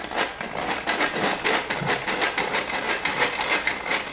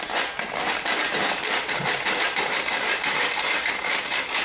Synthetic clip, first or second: second